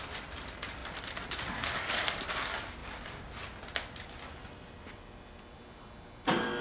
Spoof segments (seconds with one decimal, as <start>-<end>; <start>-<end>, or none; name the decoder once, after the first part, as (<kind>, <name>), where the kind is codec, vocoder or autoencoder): 0.8-2.3 (vocoder, BigVGAN v2); 2.8-3.3